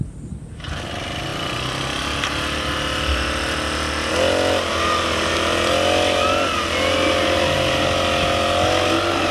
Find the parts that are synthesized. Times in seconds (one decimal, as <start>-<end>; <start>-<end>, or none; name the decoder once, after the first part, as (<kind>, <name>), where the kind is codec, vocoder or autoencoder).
none